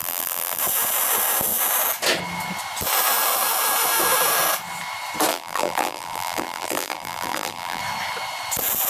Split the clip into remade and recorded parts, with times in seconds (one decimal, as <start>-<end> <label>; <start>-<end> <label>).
0.0-0.6 remade; 0.6-5.3 recorded; 5.3-7.8 remade; 7.8-8.9 recorded